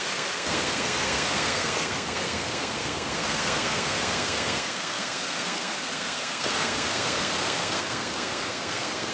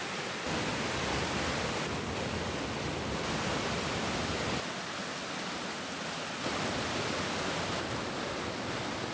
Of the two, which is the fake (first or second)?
first